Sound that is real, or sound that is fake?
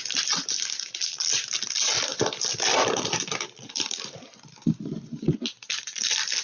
real